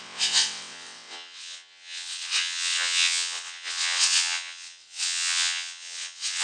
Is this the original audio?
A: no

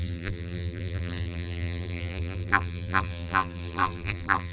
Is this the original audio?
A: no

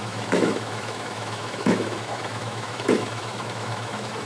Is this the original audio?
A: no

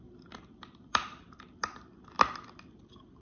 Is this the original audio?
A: no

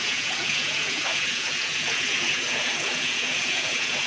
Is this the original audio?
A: no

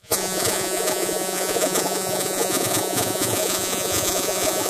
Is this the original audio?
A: no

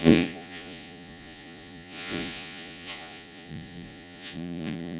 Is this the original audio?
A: no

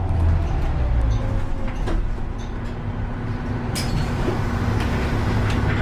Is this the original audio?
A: yes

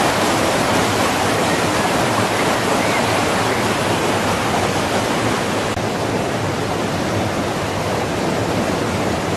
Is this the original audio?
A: yes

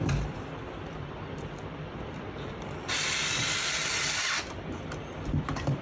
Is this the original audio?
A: no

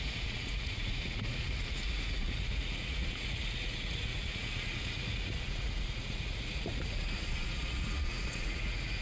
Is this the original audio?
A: no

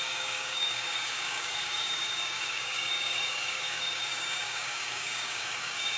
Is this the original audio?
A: no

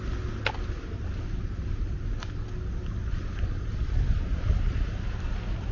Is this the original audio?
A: yes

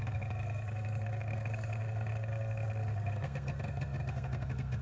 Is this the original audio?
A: no